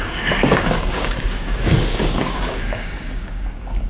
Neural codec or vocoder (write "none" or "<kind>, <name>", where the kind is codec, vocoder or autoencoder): codec, DAC